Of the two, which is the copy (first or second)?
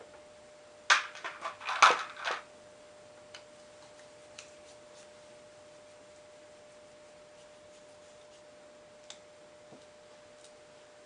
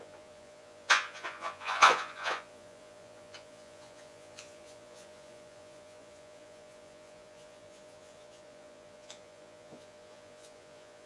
second